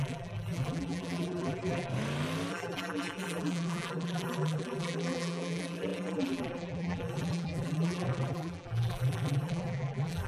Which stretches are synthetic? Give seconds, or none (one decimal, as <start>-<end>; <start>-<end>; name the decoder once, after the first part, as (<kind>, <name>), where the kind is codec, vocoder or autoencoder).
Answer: 0.0-1.9 (vocoder, BigVGAN v2); 2.5-10.3